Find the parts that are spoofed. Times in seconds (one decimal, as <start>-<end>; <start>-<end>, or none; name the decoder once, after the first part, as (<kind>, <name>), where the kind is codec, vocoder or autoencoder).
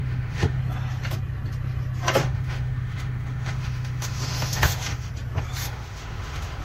0.0-0.6 (autoencoder, DAC-VAE); 2.2-5.1; 5.6-6.6